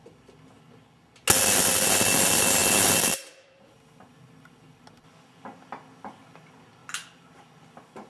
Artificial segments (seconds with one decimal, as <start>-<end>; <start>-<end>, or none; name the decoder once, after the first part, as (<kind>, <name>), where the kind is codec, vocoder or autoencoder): none